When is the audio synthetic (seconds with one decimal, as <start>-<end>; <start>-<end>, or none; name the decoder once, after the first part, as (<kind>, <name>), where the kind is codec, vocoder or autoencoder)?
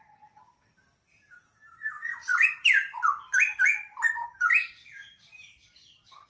none